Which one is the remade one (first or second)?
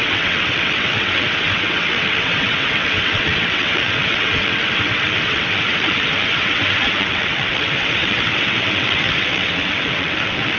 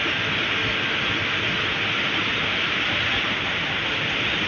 first